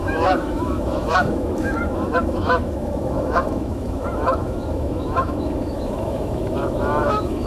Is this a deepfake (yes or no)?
yes